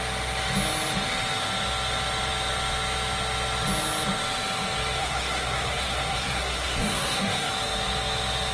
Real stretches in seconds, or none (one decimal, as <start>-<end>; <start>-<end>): 0.0-5.0; 7.5-8.5